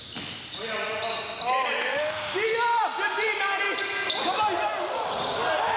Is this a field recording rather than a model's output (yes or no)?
yes